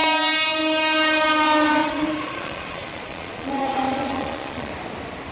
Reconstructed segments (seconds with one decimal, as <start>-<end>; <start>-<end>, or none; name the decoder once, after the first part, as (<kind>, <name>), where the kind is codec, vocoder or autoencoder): 1.8-4.7 (vocoder, Vocos)